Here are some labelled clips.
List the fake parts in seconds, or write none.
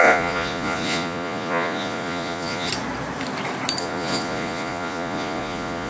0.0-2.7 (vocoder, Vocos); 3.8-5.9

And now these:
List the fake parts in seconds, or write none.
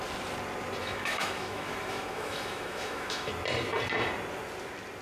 0.8-3.3 (autoencoder, DAC-VAE)